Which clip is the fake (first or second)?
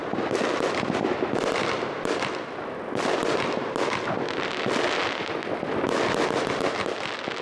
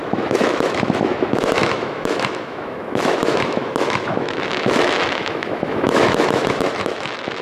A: second